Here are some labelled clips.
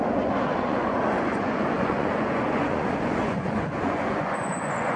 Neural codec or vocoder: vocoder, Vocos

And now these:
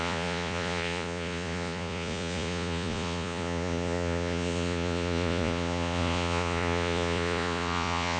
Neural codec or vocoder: vocoder, Vocos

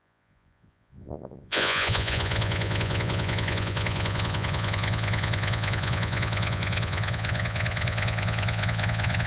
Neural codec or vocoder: vocoder, Vocos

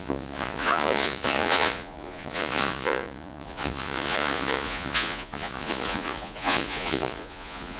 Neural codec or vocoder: vocoder, Vocos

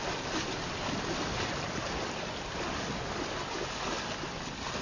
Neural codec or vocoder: none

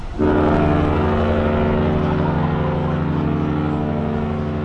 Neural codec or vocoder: none